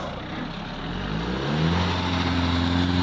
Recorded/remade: recorded